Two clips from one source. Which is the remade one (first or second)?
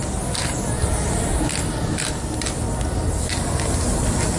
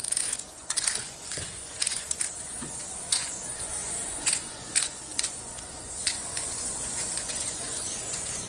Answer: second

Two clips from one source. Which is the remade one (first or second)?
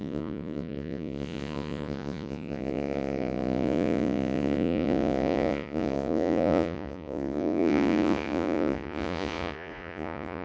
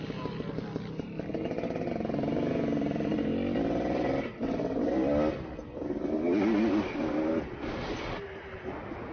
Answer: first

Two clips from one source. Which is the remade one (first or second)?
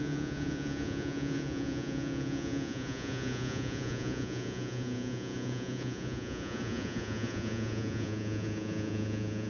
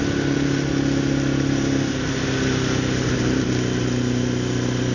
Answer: first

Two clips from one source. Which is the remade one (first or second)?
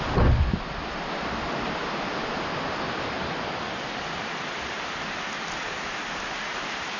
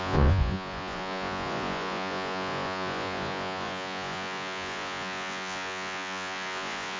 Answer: second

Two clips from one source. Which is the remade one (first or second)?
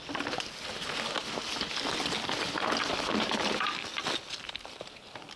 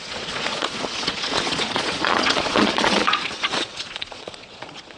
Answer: second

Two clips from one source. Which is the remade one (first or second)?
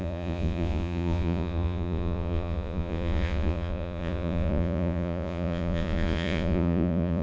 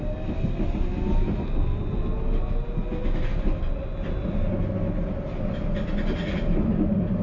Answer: first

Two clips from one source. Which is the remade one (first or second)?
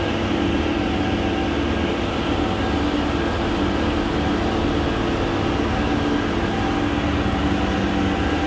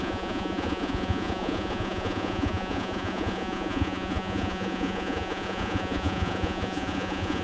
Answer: second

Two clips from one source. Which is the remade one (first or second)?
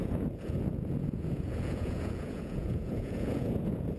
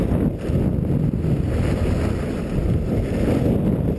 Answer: first